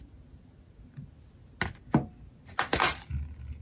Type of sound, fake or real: real